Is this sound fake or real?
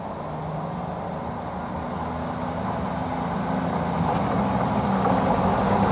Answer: real